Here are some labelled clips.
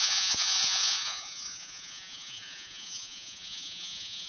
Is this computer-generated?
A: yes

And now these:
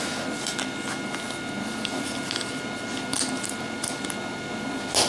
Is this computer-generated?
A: no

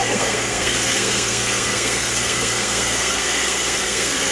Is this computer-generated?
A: yes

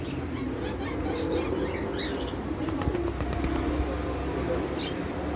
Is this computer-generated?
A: no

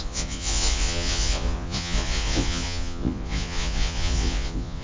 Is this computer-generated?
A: yes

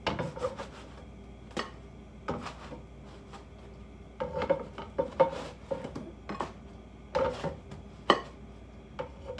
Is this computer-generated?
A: no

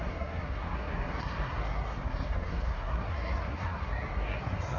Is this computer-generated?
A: yes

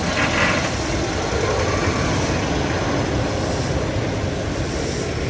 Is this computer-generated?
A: no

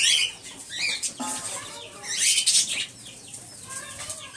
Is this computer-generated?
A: no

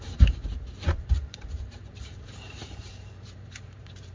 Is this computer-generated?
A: yes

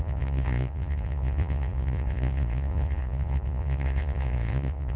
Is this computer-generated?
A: yes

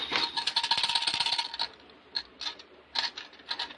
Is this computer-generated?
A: no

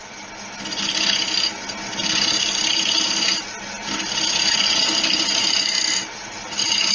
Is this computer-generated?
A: no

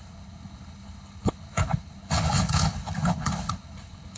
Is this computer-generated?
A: yes